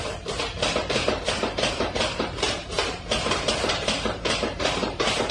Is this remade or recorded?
remade